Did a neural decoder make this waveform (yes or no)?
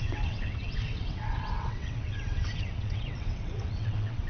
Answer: yes